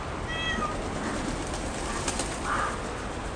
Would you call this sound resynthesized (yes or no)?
no